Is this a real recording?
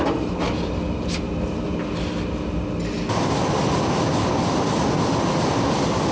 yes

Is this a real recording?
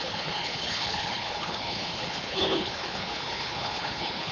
no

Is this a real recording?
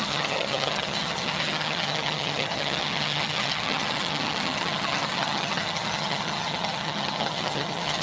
no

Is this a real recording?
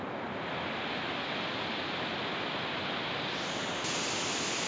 yes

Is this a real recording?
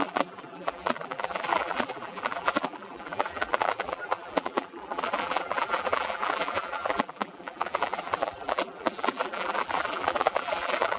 no